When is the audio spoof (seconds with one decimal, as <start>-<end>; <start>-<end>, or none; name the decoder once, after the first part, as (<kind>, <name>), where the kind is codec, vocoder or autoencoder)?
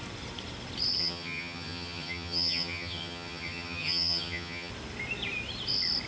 1.0-4.7 (vocoder, HiFi-GAN)